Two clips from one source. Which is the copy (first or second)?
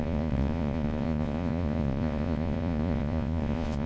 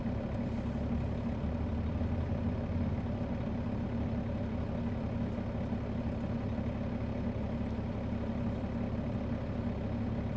first